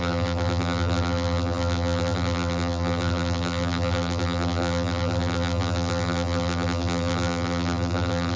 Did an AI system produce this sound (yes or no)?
yes